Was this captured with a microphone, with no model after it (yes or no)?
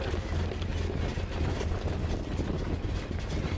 yes